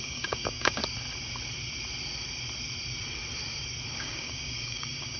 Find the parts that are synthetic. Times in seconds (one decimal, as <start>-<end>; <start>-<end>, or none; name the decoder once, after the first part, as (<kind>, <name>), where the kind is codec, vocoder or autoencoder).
0.0-0.8 (codec, DAC); 3.9-5.2